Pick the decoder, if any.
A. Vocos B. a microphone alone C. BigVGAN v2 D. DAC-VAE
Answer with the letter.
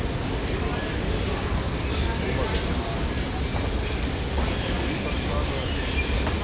B